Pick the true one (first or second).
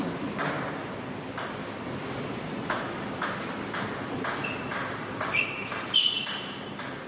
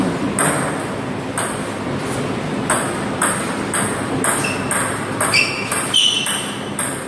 second